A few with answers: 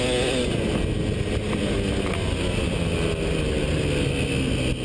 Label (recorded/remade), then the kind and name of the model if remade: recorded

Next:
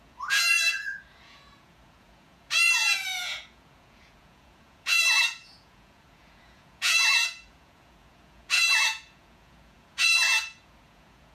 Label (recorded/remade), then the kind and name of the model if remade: remade, vocoder, Vocos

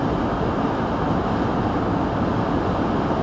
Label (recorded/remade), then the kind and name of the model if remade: recorded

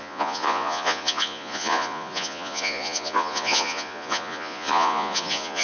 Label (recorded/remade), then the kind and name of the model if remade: remade, vocoder, Vocos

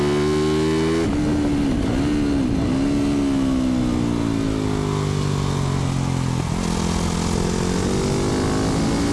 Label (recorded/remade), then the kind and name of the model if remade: recorded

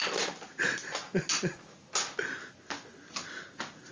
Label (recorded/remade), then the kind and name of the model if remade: recorded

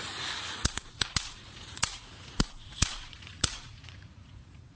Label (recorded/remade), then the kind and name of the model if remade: remade, vocoder, Vocos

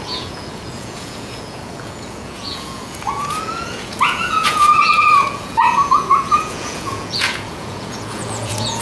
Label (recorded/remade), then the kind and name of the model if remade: remade, vocoder, Vocos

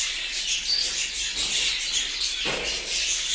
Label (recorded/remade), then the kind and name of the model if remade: recorded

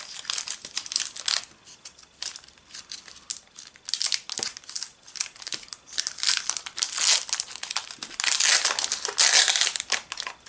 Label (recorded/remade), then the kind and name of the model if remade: recorded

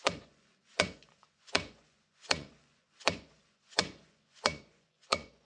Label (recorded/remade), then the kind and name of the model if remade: remade, vocoder, Vocos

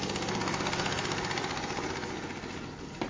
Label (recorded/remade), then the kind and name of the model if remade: recorded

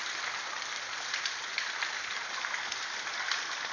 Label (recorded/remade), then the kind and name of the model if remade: recorded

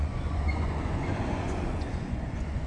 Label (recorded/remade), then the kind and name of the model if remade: remade, vocoder, Vocos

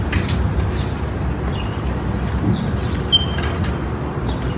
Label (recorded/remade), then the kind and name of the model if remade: recorded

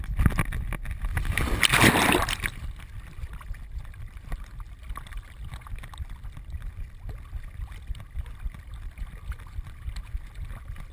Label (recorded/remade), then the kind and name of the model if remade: recorded